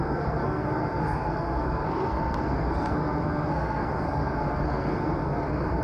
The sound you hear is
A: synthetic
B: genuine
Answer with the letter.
A